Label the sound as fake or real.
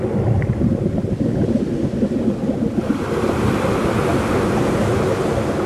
real